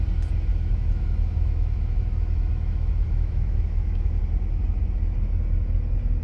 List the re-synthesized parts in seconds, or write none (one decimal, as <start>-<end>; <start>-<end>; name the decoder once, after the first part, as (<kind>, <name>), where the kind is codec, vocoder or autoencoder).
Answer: 0.5-4.2 (autoencoder, DAC-VAE)